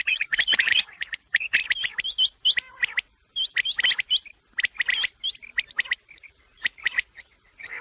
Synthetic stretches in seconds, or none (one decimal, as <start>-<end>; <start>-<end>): 0.0-1.6; 6.1-7.8